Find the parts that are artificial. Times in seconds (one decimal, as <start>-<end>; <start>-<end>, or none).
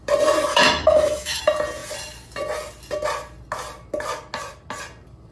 0.5-1.4